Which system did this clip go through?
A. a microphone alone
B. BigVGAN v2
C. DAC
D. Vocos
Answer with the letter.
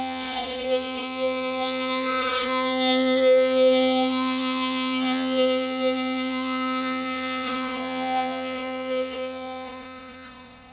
D